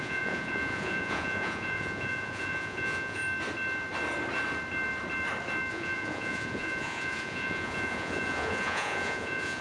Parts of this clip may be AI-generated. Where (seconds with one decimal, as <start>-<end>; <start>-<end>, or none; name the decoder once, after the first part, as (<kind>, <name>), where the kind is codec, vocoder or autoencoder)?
0.0-3.2 (vocoder, Vocos); 5.7-9.6